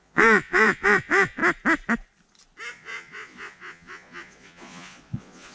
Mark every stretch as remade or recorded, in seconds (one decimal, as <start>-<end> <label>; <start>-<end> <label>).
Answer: 0.0-1.4 remade; 1.4-2.7 recorded; 2.7-5.5 remade

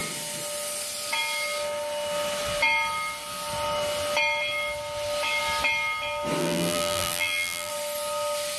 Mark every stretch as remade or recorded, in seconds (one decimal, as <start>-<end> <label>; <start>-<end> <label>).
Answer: 0.0-6.4 recorded; 6.4-7.7 remade; 7.7-8.6 recorded

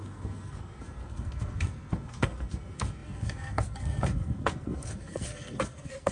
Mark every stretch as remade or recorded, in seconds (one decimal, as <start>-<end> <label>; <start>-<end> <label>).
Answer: 0.0-6.1 remade

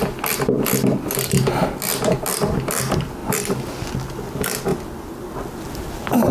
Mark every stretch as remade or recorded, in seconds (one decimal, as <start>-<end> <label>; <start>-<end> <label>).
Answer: 0.0-6.3 recorded

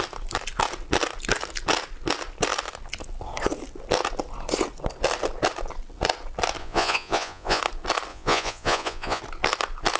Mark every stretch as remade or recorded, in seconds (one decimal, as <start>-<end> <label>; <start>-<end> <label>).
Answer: 0.0-6.6 recorded; 6.6-7.6 remade; 7.6-8.1 recorded; 8.1-9.2 remade; 9.2-10.0 recorded